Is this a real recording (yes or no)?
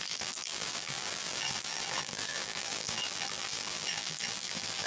no